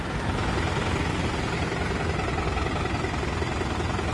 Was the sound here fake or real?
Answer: real